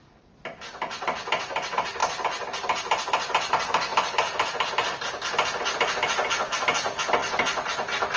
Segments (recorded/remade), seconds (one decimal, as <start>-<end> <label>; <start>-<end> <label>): 0.0-3.9 recorded; 3.9-4.7 remade; 4.7-8.2 recorded